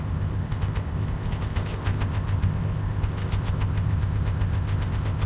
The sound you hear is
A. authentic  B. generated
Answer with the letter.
B